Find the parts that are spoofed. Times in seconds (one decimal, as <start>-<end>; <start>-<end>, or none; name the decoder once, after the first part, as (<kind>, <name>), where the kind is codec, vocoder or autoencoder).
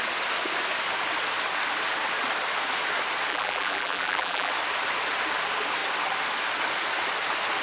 3.3-4.5 (vocoder, BigVGAN v2)